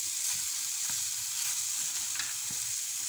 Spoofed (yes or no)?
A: no